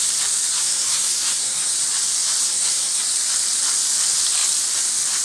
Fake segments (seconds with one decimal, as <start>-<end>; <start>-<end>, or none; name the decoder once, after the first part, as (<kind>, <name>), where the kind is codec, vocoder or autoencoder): 0.6-1.7 (codec, SNAC); 2.4-3.0